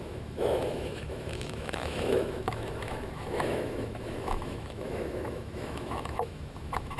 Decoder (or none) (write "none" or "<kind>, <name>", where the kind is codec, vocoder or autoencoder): autoencoder, DAC-VAE